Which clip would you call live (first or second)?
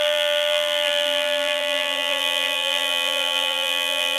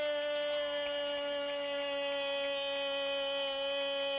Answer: second